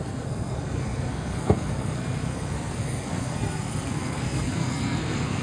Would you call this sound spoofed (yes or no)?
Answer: yes